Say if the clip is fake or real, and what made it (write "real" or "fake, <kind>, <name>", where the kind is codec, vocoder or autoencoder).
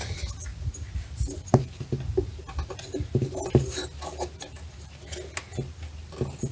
real